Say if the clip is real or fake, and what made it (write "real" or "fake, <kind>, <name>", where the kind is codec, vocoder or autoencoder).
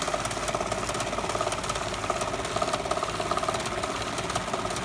real